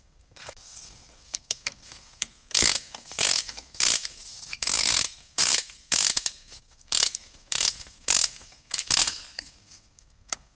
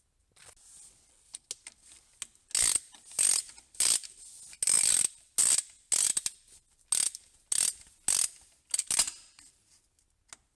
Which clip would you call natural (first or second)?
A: second